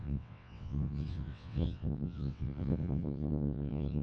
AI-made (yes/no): yes